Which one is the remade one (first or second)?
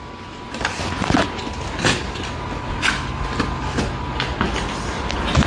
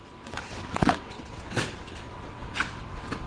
second